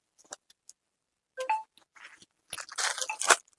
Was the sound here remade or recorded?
recorded